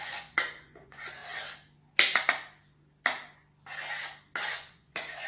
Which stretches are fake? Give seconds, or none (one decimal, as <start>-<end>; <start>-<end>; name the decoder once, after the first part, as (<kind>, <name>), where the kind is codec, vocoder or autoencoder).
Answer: 0.0-1.2 (vocoder, Vocos); 4.4-5.3